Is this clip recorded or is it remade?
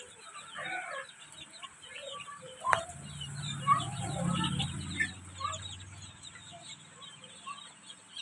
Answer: recorded